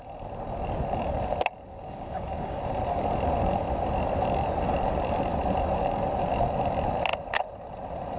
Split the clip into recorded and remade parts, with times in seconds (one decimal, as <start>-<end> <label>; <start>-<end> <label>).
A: 0.0-1.7 recorded; 1.7-2.6 remade; 2.6-8.2 recorded